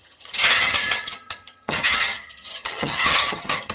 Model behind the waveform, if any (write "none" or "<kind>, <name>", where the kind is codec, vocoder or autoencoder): vocoder, HiFi-GAN